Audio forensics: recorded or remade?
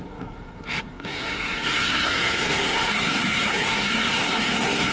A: remade